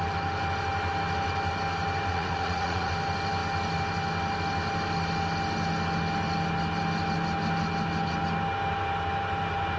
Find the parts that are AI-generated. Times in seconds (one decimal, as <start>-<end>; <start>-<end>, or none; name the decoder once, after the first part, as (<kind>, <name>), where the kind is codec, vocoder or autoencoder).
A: 2.1-2.9 (vocoder, Vocos)